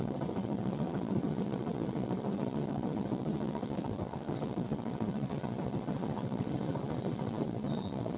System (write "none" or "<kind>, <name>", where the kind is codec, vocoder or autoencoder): vocoder, WaveNeXt